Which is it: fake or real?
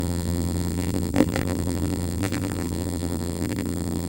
fake